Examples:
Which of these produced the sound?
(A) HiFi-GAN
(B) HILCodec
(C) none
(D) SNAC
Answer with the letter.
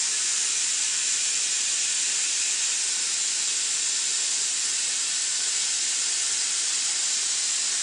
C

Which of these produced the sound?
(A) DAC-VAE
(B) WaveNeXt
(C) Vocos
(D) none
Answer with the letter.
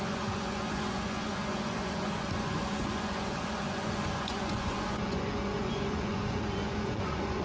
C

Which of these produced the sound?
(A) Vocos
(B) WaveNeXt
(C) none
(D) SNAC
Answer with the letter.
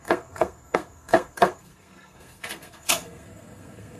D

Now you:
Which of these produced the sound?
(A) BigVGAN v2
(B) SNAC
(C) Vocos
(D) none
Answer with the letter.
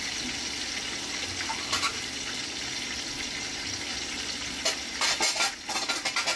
D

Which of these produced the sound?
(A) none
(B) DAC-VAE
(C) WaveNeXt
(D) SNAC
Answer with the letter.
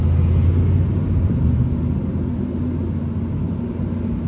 A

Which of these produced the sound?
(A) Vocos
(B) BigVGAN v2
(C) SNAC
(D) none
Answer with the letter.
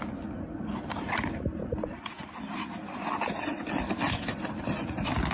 D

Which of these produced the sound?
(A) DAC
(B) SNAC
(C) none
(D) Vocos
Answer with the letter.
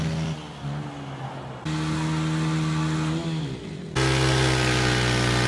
C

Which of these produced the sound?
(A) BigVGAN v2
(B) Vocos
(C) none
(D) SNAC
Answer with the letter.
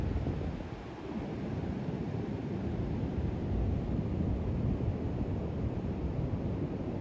C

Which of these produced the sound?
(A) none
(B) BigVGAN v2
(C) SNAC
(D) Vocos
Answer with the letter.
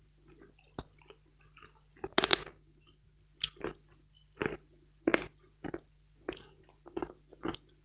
A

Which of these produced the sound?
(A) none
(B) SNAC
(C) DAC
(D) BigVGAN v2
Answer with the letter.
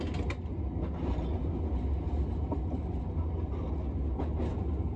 A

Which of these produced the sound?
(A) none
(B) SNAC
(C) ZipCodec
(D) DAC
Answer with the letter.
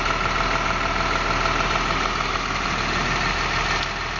A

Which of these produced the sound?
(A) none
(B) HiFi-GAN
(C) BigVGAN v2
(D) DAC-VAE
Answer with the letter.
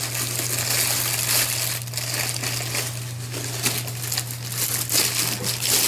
A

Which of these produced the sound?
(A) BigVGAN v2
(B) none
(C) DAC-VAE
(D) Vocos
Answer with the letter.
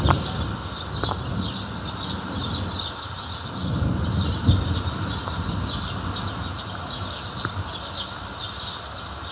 B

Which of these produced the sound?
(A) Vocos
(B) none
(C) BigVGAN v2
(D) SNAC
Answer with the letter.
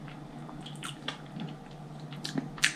B